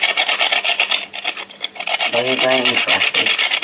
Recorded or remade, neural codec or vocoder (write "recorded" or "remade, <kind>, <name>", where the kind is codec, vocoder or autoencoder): recorded